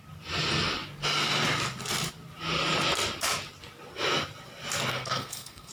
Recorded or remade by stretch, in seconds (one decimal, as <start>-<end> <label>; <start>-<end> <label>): 0.0-4.9 recorded; 4.9-5.7 remade